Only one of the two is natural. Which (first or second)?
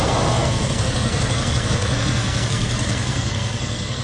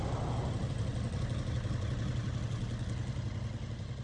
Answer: second